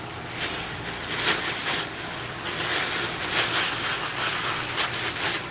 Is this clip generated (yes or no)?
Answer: no